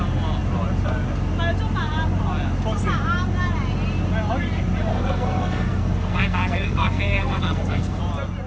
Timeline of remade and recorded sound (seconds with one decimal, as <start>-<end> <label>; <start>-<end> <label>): 0.0-4.9 recorded; 4.9-8.0 remade; 8.0-8.5 recorded